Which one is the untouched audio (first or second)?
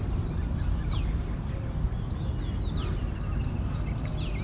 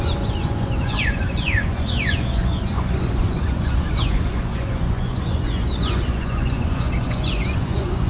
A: first